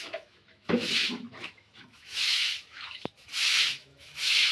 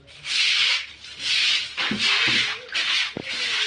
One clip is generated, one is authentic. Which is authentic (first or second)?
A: second